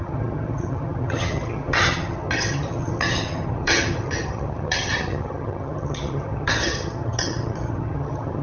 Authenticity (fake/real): fake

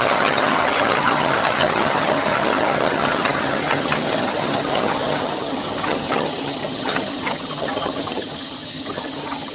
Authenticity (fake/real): fake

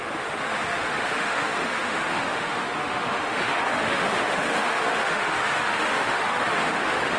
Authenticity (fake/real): fake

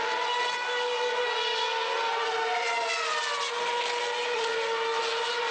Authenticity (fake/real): real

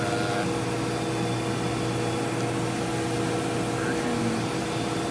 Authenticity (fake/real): real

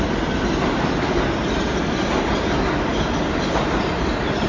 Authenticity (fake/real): real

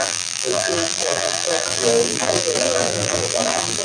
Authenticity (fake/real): fake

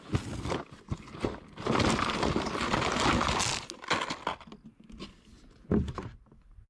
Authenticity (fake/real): real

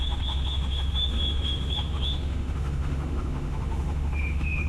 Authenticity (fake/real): fake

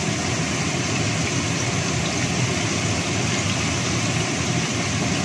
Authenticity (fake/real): real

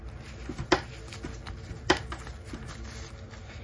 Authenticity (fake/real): real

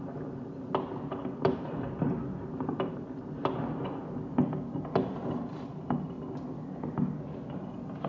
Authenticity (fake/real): real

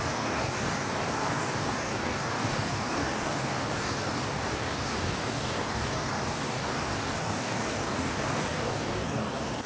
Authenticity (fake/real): fake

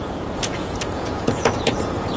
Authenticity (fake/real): fake